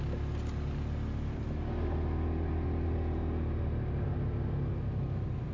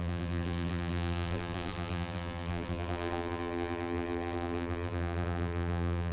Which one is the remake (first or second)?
second